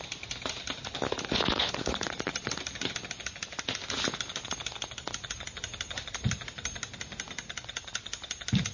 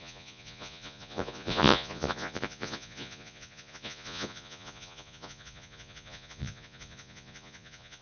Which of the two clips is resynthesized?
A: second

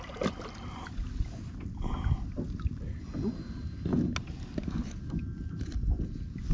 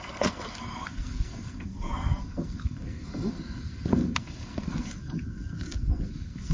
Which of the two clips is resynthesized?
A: second